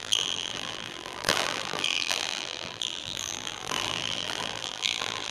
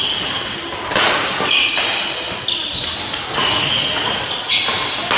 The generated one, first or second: first